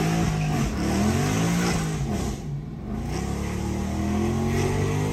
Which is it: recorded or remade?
recorded